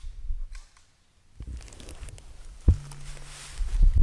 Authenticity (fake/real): real